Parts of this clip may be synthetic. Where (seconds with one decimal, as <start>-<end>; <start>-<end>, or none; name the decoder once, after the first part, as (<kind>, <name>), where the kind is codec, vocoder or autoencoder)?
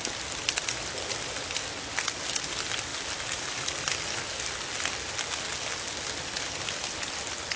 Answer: none